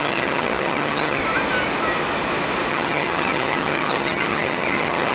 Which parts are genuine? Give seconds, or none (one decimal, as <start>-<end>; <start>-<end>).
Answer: 1.2-2.7